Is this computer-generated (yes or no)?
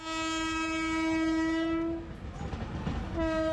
no